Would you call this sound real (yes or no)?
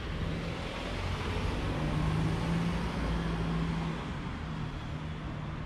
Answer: yes